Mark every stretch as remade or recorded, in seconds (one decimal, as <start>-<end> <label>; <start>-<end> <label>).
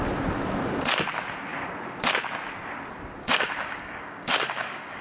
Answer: 0.0-3.2 recorded; 3.2-5.0 remade